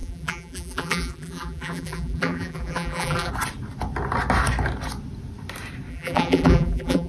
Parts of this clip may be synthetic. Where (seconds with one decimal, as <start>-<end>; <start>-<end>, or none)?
0.0-3.3; 5.9-7.1